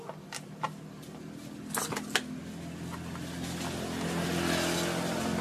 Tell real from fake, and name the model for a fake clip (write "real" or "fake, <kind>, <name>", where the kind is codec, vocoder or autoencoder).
real